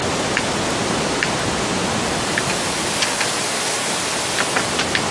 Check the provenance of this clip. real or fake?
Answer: real